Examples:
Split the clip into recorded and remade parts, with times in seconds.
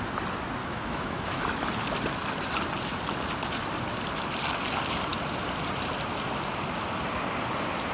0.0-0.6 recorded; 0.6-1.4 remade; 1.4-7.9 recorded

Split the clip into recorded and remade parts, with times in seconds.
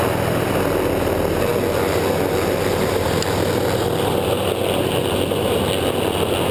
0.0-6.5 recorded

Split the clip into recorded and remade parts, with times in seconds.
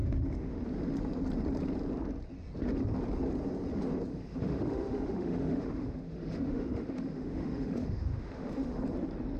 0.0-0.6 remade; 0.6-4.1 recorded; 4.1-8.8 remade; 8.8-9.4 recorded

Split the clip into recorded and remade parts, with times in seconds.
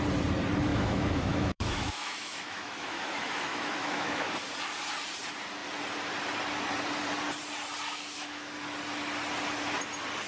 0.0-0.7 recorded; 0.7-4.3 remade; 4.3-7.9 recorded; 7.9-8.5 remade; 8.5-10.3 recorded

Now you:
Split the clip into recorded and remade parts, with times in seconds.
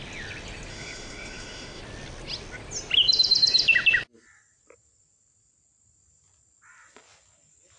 0.0-0.7 recorded; 0.7-1.8 remade; 1.8-7.8 recorded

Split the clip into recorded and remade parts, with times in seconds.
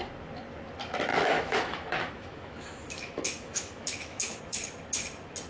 0.0-1.1 recorded; 1.1-4.4 remade; 4.4-5.5 recorded